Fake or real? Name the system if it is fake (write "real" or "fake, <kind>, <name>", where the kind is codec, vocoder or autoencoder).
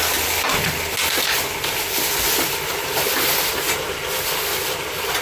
real